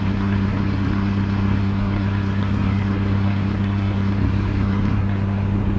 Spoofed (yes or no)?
yes